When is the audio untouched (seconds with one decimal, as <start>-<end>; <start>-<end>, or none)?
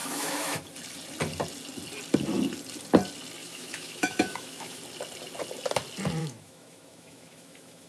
0.6-3.4; 4.8-6.2